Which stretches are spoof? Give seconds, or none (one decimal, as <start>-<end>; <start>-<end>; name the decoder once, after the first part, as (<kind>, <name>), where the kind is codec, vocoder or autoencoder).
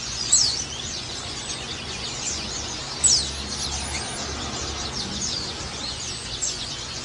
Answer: 0.0-2.8 (vocoder, Vocos); 5.0-7.0